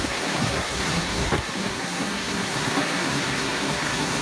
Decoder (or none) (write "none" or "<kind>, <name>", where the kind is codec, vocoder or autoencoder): codec, SNAC